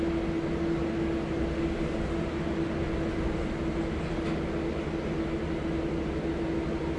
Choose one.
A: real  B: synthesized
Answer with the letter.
A